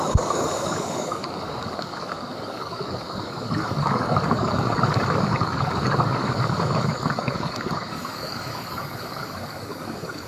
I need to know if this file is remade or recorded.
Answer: remade